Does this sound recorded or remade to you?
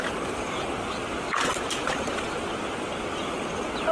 recorded